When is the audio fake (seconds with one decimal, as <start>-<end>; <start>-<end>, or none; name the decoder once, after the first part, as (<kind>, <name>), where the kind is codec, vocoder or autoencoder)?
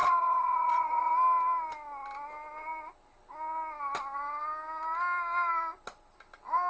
0.0-1.1 (vocoder, WaveNeXt)